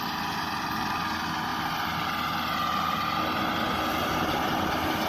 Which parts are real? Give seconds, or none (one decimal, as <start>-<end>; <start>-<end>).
0.0-5.1